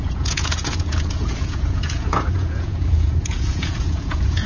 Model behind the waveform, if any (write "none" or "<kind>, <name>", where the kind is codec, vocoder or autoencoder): vocoder, Vocos